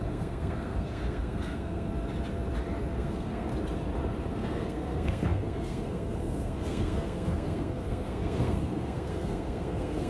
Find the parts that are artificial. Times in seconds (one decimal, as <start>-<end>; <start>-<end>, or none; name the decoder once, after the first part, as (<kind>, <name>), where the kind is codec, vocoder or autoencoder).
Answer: 0.0-1.9 (codec, SNAC); 2.9-3.5; 4.3-10.1